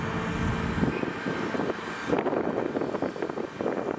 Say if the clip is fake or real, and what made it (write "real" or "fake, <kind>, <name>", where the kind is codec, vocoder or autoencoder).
real